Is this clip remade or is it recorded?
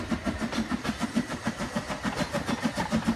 recorded